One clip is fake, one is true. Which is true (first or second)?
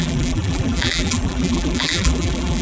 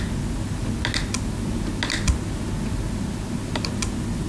second